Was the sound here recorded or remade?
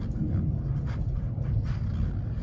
recorded